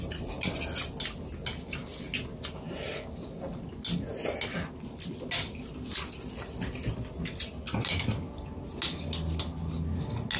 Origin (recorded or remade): recorded